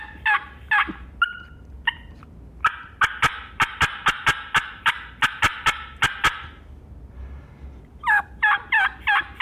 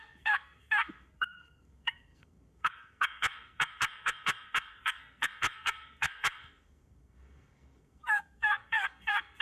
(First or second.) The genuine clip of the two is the first